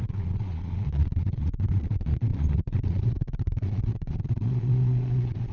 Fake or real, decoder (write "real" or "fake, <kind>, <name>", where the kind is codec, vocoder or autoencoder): fake, vocoder, Vocos